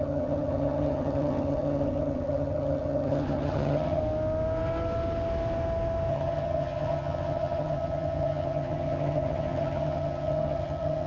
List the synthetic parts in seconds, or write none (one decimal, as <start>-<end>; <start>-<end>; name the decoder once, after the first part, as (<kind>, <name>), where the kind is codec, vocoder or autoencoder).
0.0-4.0 (vocoder, HiFi-GAN); 6.1-11.1